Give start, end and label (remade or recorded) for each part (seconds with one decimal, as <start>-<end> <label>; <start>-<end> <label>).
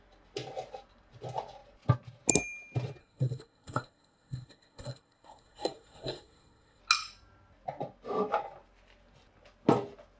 0.0-3.0 recorded; 3.0-6.8 remade; 6.8-10.2 recorded